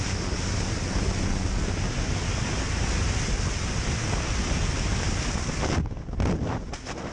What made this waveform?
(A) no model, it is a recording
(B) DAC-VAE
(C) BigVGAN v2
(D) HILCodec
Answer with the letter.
A